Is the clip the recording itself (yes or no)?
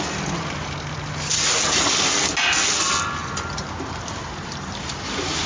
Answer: yes